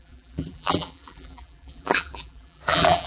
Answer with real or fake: fake